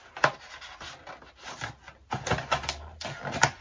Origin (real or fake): real